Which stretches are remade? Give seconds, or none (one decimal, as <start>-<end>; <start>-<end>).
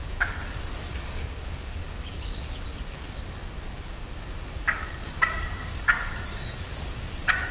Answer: 0.0-7.5